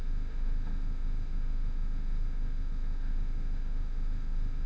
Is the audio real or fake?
fake